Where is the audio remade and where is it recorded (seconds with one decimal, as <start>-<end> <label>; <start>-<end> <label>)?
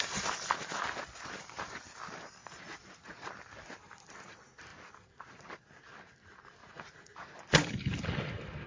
0.0-2.4 recorded; 2.4-3.3 remade; 3.3-6.6 recorded; 6.6-7.4 remade; 7.4-8.7 recorded